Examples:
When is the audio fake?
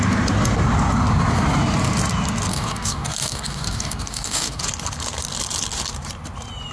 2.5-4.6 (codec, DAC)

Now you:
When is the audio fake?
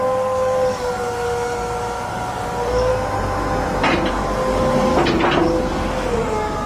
0.0-2.9 (codec, DAC); 4.1-4.9; 5.7-6.7